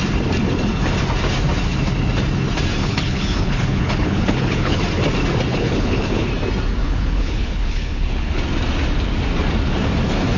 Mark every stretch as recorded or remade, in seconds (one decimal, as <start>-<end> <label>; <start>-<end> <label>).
0.0-2.8 recorded; 2.8-4.8 remade; 4.8-5.5 recorded; 5.5-6.3 remade; 6.3-6.8 recorded; 6.8-8.4 remade; 8.4-10.4 recorded